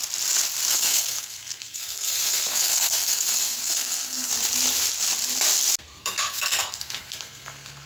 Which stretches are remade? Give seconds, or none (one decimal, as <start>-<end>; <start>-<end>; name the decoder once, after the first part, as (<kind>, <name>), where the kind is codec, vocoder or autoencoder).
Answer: 0.7-4.3 (codec, SNAC); 5.8-7.9